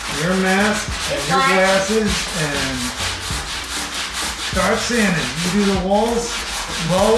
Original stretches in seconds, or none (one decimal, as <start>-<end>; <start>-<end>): 0.0-6.4